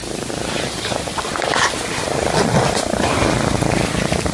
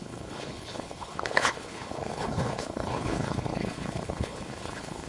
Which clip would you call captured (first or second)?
first